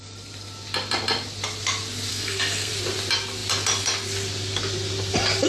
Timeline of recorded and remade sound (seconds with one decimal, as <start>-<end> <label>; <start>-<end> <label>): 0.0-2.1 recorded; 2.1-2.7 remade; 2.7-5.5 recorded